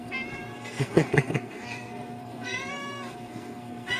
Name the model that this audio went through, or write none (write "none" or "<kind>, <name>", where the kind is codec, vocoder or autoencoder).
codec, SNAC